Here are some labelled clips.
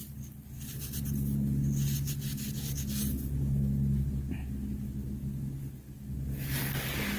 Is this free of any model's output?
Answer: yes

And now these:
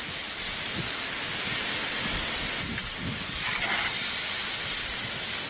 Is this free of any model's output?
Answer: yes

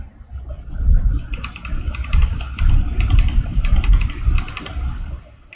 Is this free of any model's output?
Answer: yes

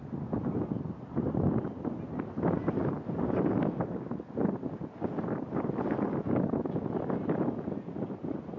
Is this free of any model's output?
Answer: yes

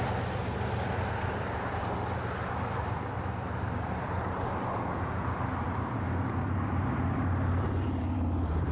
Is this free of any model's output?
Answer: no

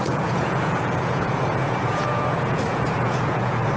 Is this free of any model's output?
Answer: no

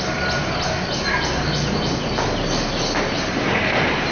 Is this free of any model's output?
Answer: yes